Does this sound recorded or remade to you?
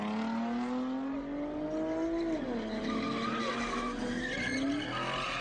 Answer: recorded